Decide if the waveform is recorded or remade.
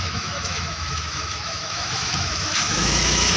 remade